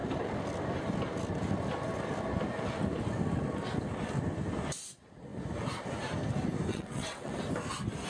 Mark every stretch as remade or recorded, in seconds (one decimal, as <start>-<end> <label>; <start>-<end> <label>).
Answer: 0.0-6.7 recorded; 6.7-7.3 remade; 7.3-8.1 recorded